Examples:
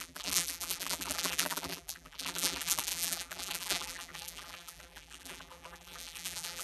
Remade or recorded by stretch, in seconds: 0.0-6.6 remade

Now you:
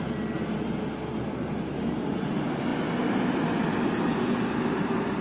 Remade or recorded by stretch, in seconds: 0.0-5.2 recorded

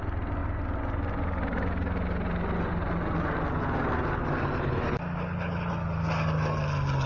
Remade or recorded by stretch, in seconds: 0.0-4.2 recorded; 4.2-5.7 remade; 5.7-7.1 recorded

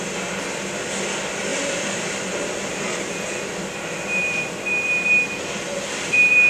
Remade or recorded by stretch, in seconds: 0.0-1.5 recorded; 1.5-4.4 remade; 4.4-6.5 recorded

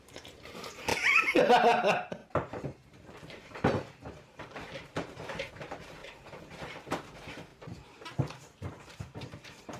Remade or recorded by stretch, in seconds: 0.0-7.5 remade; 7.5-9.0 recorded; 9.0-9.8 remade

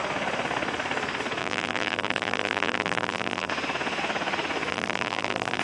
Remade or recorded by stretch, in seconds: 0.0-1.4 recorded; 1.4-3.5 remade; 3.5-4.7 recorded; 4.7-5.6 remade

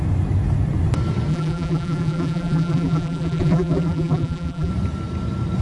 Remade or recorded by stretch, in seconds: 0.0-1.3 recorded; 1.3-4.7 remade; 4.7-5.6 recorded